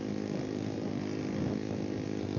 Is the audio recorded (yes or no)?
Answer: yes